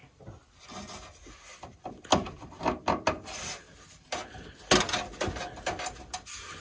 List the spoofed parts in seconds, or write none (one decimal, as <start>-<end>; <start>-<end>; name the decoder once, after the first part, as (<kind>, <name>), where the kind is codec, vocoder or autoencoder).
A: none